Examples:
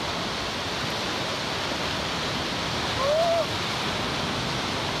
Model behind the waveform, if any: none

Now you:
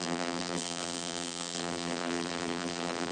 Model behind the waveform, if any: vocoder, BigVGAN v2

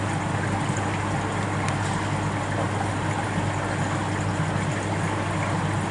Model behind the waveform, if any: none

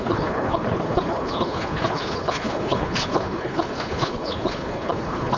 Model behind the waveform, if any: codec, HILCodec